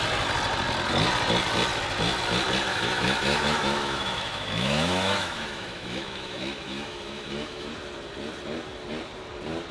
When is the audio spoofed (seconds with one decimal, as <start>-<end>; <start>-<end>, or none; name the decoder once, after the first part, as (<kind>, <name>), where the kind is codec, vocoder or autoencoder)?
2.7-7.7 (autoencoder, DAC-VAE)